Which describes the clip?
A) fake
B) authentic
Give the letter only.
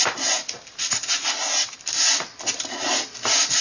B